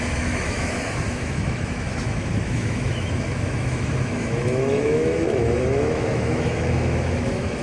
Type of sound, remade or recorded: remade